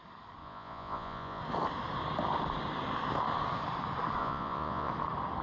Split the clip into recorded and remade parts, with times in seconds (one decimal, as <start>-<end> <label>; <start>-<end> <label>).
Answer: 0.0-0.4 recorded; 0.4-1.4 remade; 1.4-4.2 recorded; 4.2-4.9 remade; 4.9-5.4 recorded